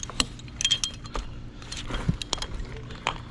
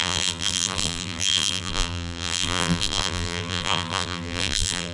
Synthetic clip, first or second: second